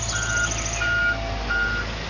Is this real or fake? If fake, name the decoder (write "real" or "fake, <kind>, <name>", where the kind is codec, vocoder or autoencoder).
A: real